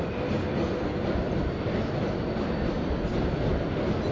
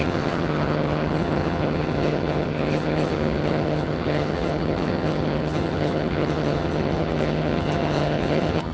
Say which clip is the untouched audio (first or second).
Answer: first